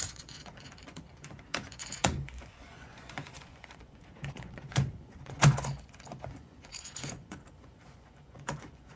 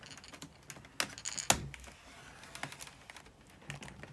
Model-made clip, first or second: first